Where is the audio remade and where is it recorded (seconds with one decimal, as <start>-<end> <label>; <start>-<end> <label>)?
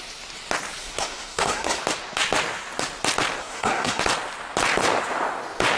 0.0-0.8 recorded; 0.8-1.8 remade; 1.8-3.4 recorded; 3.4-4.0 remade; 4.0-5.8 recorded